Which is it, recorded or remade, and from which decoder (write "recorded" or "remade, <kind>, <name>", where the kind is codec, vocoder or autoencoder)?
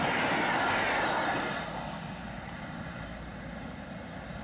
recorded